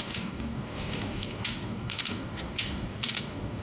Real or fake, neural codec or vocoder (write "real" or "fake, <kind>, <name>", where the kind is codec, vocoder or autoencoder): fake, codec, DAC